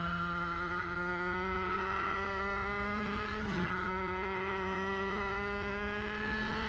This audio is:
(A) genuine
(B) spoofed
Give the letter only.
B